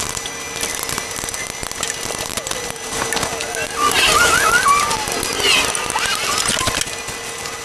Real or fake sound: real